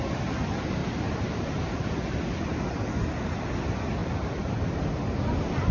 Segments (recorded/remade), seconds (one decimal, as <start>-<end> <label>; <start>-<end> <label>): 0.0-0.8 recorded; 0.8-2.3 remade; 2.3-4.0 recorded; 4.0-4.8 remade; 4.8-5.7 recorded